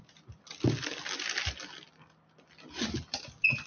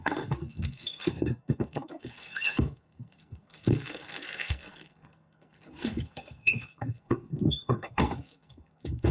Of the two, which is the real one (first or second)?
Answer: first